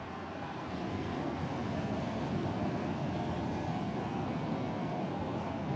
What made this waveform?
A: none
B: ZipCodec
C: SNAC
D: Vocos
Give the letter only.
C